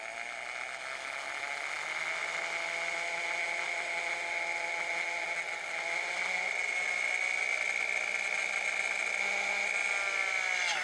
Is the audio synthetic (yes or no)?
no